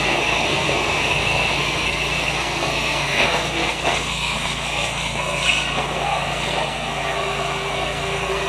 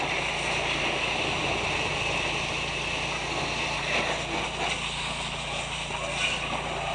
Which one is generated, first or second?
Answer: first